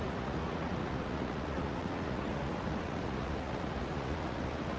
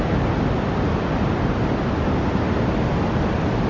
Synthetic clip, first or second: first